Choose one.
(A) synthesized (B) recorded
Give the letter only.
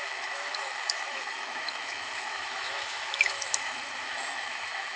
A